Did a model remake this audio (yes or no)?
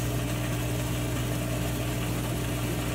no